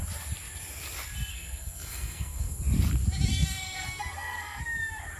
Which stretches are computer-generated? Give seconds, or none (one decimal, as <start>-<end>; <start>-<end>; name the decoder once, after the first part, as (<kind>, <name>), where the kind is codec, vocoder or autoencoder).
1.3-2.6 (codec, SNAC); 3.3-4.6